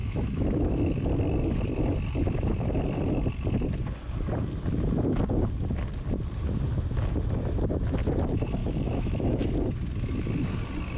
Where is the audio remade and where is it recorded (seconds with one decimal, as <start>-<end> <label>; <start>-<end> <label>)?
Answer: 0.0-0.7 remade; 0.7-8.6 recorded; 8.6-9.5 remade; 9.5-11.0 recorded